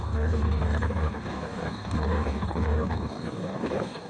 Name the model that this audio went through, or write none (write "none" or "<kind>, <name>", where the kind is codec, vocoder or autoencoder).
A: codec, DAC